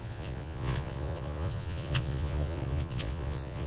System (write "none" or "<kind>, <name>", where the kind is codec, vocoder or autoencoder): vocoder, Vocos